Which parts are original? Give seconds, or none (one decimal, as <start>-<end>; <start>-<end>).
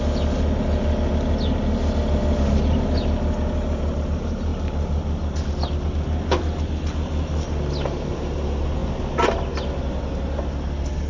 0.0-11.1